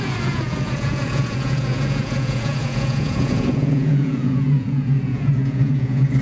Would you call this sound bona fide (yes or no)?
no